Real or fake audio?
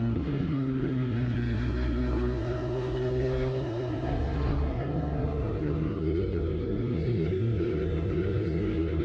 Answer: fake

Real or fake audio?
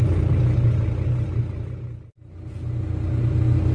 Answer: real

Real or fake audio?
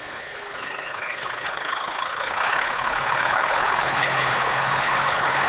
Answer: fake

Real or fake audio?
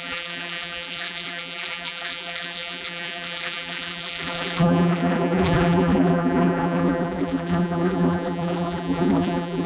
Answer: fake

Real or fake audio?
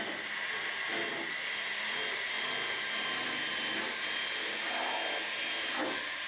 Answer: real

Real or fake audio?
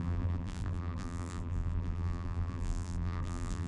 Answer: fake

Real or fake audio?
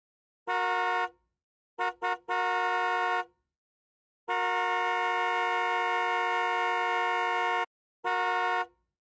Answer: real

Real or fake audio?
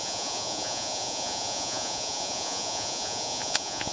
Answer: fake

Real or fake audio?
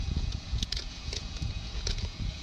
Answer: fake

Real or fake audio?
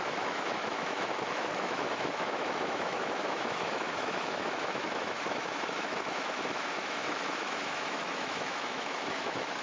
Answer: fake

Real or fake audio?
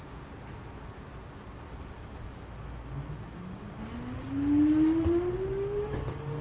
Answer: real